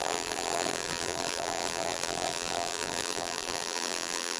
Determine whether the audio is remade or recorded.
remade